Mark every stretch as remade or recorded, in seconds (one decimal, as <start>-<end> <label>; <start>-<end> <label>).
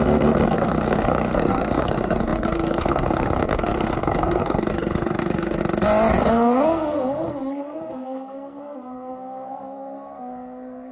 0.0-5.6 remade; 5.6-6.2 recorded; 6.2-10.9 remade